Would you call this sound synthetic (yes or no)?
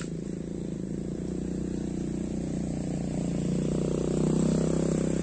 no